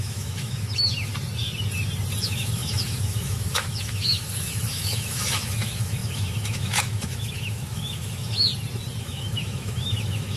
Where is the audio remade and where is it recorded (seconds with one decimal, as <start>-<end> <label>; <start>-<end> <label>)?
0.0-1.1 remade; 1.1-2.2 recorded; 2.2-8.5 remade; 8.5-9.0 recorded; 9.0-10.4 remade